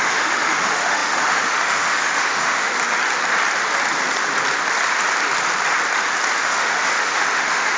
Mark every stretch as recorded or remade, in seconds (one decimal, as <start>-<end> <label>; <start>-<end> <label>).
0.0-2.7 remade; 2.7-6.4 recorded; 6.4-7.8 remade